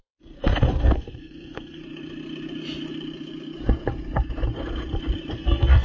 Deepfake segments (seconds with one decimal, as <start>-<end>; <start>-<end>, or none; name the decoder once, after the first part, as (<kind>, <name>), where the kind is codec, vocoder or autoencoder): 0.0-1.8 (codec, SNAC); 5.3-5.8